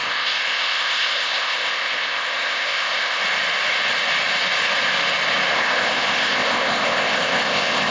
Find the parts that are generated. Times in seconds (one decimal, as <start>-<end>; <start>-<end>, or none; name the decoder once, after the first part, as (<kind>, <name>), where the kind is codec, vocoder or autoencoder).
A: 0.0-3.2 (codec, ZipCodec); 5.5-7.9